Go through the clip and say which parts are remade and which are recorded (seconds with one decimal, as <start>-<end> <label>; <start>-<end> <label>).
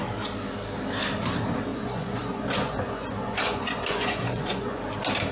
0.0-1.7 recorded; 1.7-4.8 remade; 4.8-5.3 recorded